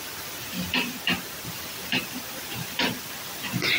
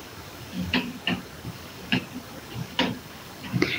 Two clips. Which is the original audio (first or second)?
first